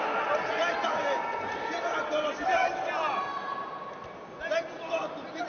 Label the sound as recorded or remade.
recorded